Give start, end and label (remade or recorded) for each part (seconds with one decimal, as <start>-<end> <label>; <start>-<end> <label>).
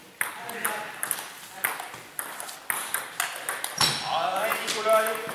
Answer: 0.0-3.2 remade; 3.2-4.5 recorded; 4.5-5.3 remade